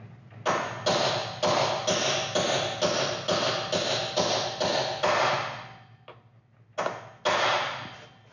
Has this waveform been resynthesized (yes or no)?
no